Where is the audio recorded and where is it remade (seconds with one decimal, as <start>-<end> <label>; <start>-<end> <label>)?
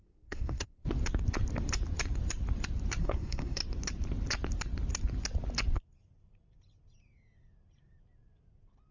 0.0-0.8 remade; 0.8-3.0 recorded; 3.0-3.6 remade; 3.6-8.9 recorded